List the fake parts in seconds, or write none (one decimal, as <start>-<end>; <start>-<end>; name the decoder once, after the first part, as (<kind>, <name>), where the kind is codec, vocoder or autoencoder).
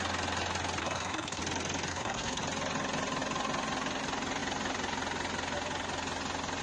0.8-1.4 (codec, SNAC); 1.9-2.4